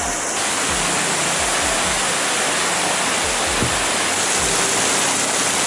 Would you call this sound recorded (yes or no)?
yes